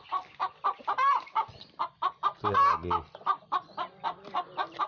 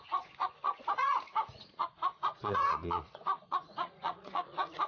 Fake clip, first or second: second